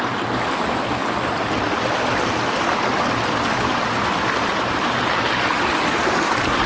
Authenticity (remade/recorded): recorded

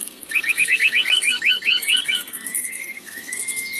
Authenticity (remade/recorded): remade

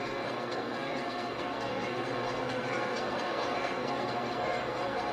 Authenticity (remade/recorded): remade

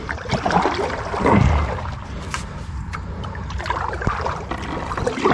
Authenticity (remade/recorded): recorded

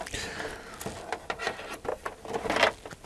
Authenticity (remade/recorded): recorded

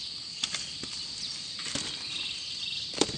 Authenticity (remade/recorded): recorded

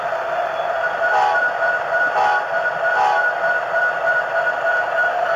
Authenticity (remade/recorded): recorded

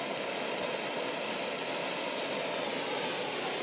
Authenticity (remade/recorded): recorded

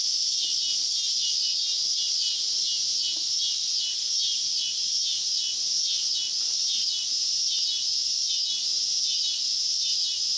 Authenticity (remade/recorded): recorded